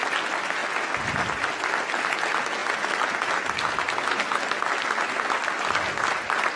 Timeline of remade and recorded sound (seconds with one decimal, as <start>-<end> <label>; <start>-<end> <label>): 0.0-6.6 recorded